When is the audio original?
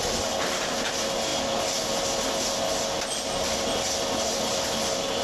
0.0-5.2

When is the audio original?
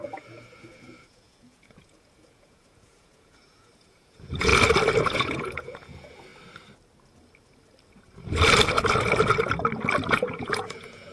4.5-5.0; 6.3-10.1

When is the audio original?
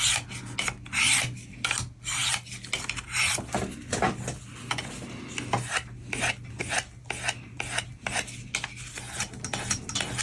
0.0-10.2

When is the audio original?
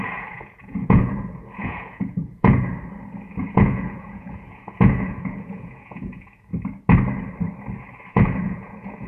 2.7-3.4; 6.5-8.1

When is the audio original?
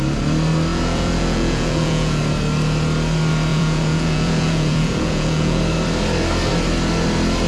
0.0-0.7; 2.2-3.5; 5.6-7.5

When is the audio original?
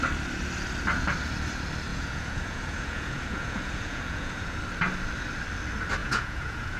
0.0-1.9; 4.6-6.0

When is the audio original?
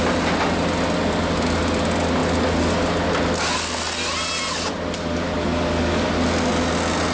0.0-7.1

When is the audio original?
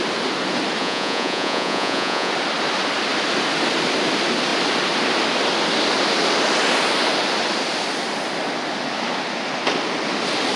0.0-0.8; 2.3-10.6